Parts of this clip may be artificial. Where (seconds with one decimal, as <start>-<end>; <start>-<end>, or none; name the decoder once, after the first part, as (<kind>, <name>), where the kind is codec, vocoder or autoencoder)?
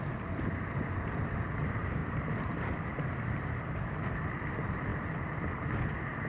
0.0-4.9 (vocoder, BigVGAN v2)